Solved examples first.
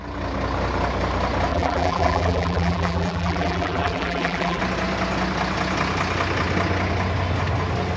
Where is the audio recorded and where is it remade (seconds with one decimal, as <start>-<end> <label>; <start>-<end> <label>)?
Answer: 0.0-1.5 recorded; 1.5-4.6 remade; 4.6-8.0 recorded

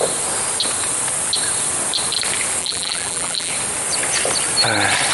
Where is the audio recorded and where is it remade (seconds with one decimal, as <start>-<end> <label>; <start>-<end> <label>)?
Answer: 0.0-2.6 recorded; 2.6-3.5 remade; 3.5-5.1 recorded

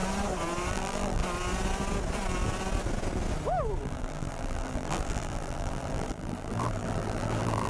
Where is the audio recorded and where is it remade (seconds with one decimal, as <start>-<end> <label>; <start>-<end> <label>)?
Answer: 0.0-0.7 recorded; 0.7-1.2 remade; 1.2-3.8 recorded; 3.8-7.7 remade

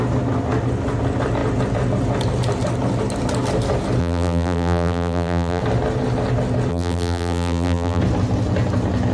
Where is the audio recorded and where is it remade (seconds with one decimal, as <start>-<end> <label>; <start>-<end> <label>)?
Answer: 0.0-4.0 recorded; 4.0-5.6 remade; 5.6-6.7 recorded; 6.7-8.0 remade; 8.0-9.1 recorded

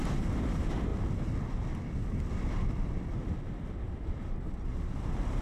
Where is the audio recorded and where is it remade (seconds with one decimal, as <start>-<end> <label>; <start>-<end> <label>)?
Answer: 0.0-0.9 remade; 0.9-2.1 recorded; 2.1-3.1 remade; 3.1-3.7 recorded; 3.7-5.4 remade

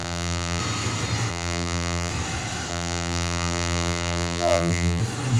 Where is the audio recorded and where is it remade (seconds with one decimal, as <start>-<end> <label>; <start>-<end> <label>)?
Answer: 0.0-0.6 remade; 0.6-1.3 recorded; 1.3-2.1 remade; 2.1-2.7 recorded; 2.7-5.0 remade; 5.0-5.4 recorded

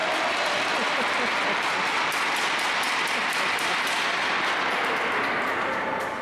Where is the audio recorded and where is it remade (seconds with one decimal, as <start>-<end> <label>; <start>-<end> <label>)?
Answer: 0.0-6.2 recorded